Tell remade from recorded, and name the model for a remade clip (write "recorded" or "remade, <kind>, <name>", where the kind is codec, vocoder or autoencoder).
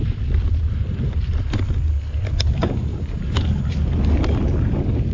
recorded